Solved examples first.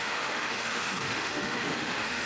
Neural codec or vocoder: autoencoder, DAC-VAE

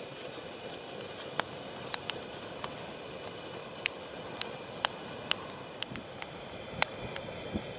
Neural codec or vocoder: none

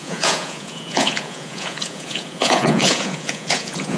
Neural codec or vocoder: vocoder, Vocos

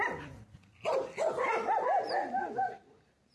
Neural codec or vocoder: none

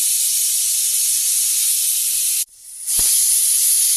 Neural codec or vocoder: none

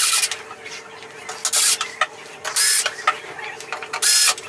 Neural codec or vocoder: none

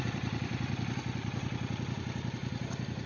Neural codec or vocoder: vocoder, BigVGAN v2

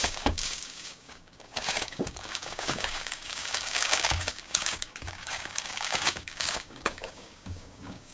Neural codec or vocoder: codec, DAC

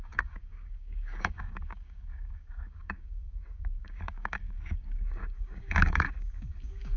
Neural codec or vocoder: codec, DAC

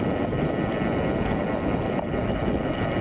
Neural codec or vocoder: none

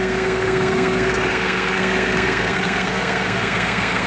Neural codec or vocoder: codec, SNAC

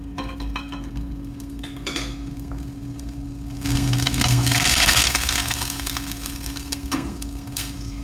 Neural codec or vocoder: codec, SNAC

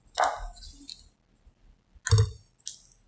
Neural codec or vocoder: none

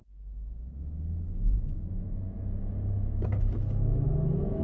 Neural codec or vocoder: autoencoder, DAC-VAE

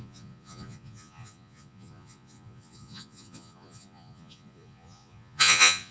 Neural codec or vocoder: vocoder, Vocos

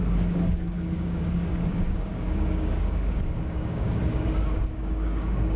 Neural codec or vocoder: codec, DAC